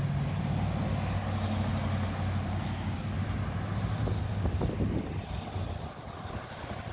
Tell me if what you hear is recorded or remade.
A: recorded